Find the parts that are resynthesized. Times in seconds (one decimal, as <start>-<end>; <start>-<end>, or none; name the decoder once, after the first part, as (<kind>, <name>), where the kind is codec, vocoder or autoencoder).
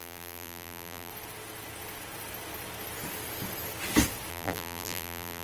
0.0-1.1 (vocoder, BigVGAN v2); 4.3-5.4